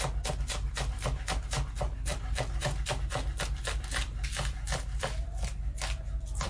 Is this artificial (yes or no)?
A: no